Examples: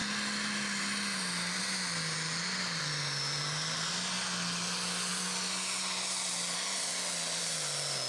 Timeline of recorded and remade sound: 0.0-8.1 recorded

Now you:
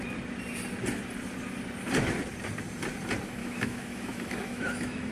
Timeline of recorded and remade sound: 0.0-3.4 recorded; 3.4-5.1 remade

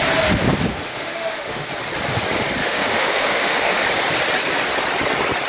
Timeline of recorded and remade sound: 0.0-0.7 recorded; 0.7-1.7 remade; 1.7-2.6 recorded; 2.6-3.8 remade; 3.8-5.5 recorded

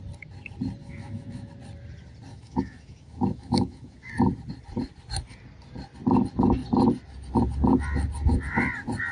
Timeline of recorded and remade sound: 0.0-0.8 recorded; 0.8-1.5 remade; 1.5-2.3 recorded; 2.3-4.1 remade; 4.1-9.1 recorded